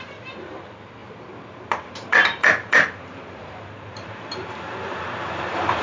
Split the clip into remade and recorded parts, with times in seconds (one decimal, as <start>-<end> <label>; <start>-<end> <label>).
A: 0.0-1.0 remade; 1.0-1.8 recorded; 1.8-5.8 remade